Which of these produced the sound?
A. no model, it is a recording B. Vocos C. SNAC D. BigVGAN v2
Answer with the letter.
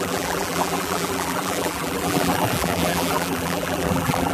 D